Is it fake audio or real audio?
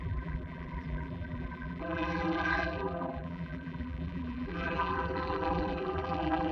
fake